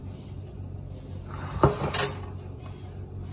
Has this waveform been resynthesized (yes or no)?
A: no